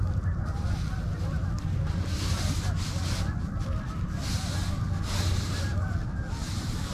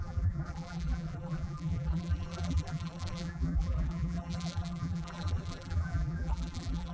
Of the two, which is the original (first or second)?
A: first